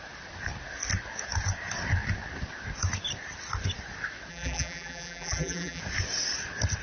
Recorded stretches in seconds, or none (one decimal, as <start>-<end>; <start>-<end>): 0.0-4.3; 5.8-6.8